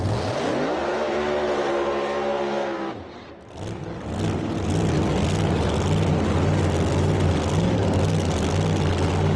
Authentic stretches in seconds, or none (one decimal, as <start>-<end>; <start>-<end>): 0.0-9.4